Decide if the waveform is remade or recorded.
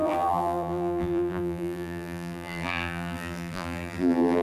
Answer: remade